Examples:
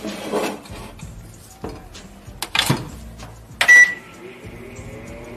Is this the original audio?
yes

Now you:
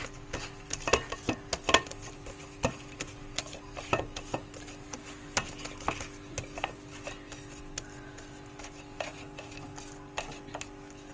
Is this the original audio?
yes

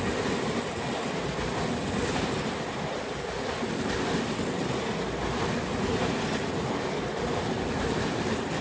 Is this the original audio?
yes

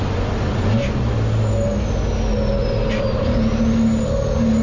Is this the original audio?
yes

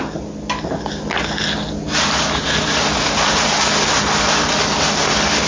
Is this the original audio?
yes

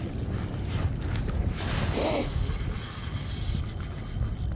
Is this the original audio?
yes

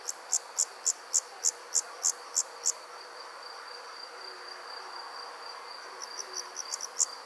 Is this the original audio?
yes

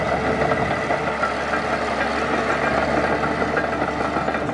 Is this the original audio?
yes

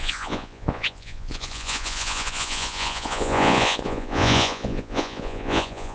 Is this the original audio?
no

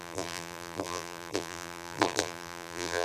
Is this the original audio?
no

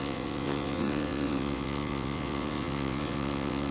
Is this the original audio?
no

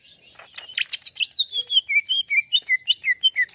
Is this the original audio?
yes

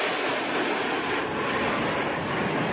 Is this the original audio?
yes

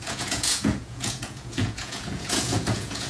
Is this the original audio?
no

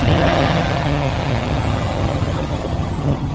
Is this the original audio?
no